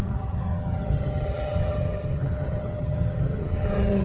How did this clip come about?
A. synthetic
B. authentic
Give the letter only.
A